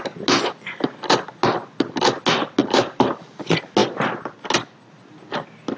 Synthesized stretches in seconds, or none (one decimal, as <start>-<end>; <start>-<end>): 2.6-3.4